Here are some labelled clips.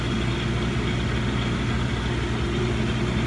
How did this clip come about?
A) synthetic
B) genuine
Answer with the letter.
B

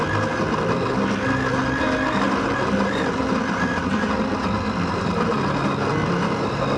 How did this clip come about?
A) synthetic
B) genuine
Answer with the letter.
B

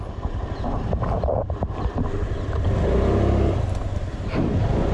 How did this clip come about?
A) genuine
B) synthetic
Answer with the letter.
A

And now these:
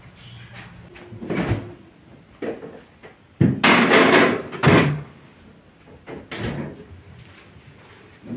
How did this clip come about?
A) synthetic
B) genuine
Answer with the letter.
B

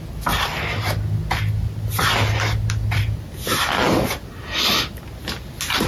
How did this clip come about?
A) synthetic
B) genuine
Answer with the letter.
B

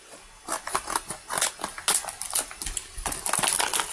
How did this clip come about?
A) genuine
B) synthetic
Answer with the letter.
A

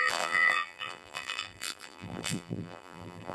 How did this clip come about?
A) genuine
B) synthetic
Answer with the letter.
B